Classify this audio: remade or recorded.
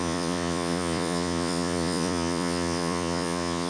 remade